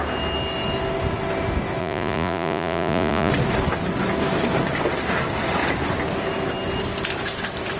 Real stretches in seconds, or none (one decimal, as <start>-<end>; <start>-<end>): 0.0-1.8; 3.3-7.8